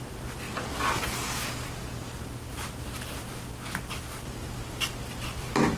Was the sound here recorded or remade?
recorded